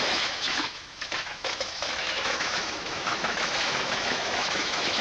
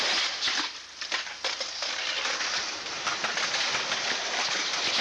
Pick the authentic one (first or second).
second